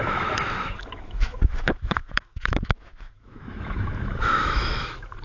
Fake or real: fake